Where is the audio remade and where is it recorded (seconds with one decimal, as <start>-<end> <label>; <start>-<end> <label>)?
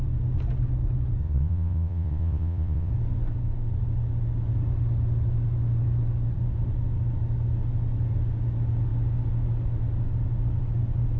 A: 0.0-1.2 recorded; 1.2-2.9 remade; 2.9-11.2 recorded